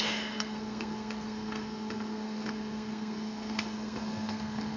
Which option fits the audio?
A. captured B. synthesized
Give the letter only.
B